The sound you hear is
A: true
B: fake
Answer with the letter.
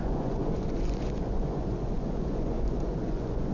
B